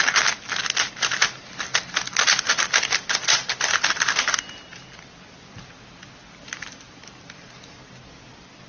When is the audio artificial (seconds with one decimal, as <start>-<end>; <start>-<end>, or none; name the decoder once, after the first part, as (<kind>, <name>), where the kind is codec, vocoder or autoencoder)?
none